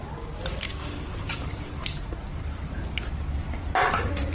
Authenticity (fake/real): real